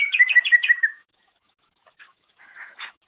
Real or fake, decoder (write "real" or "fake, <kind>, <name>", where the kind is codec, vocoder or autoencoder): fake, autoencoder, DAC-VAE